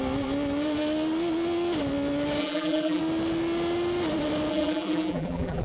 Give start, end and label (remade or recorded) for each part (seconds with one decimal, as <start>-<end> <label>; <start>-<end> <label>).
0.0-2.4 recorded; 2.4-3.0 remade; 3.0-4.5 recorded; 4.5-5.6 remade